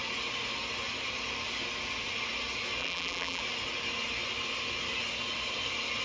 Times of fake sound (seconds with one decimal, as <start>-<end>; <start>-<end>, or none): 2.8-3.4